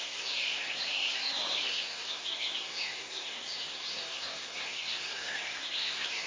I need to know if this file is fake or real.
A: fake